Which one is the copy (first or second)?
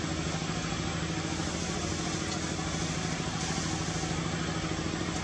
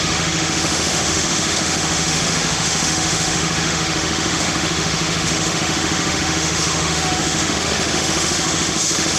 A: second